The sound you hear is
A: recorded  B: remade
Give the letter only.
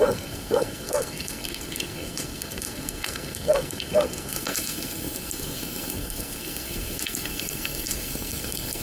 B